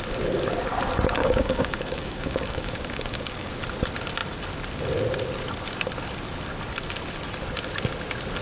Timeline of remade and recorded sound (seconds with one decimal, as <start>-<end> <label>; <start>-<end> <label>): 0.0-1.2 recorded; 1.2-3.5 remade; 3.5-8.4 recorded